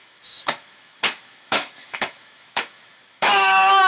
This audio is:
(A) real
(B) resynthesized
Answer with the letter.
B